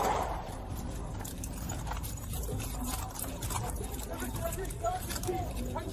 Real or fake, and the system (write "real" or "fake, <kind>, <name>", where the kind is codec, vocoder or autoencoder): fake, vocoder, BigVGAN v2